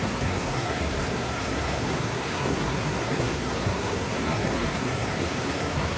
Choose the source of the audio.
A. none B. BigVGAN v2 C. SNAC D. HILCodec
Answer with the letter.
C